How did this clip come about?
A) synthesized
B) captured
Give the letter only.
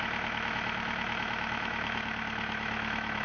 A